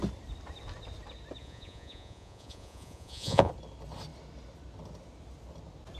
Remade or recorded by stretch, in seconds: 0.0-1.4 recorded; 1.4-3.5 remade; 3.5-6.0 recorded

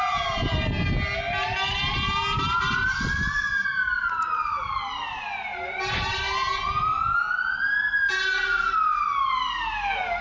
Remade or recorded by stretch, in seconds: 0.0-10.2 recorded

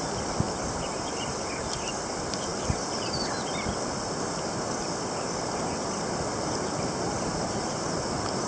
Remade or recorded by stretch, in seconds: 0.0-8.5 recorded

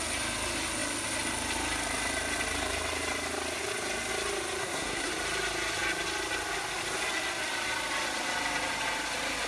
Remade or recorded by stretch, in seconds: 0.0-4.6 recorded; 4.6-5.1 remade; 5.1-9.5 recorded

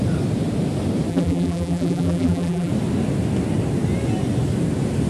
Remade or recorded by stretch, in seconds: 0.0-1.1 recorded; 1.1-2.7 remade; 2.7-5.1 recorded